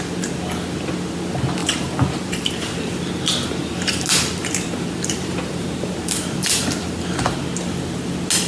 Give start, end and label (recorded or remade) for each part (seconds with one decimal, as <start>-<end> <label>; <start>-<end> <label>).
0.0-1.6 recorded; 1.6-2.9 remade; 2.9-3.6 recorded; 3.6-6.7 remade; 6.7-8.5 recorded